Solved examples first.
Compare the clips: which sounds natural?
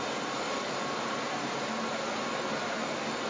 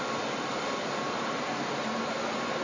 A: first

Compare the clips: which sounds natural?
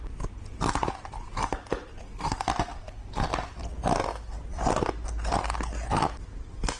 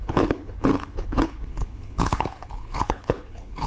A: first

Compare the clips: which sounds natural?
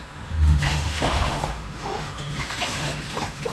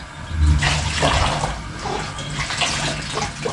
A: second